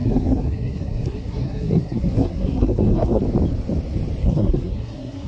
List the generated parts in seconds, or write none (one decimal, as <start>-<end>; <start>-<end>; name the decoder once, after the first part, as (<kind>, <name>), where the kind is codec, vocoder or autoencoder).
0.0-3.2 (codec, SNAC); 4.2-5.3